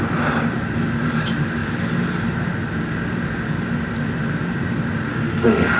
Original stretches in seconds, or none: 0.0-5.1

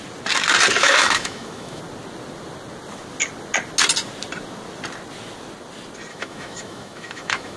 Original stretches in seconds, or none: 0.0-0.8; 1.8-6.1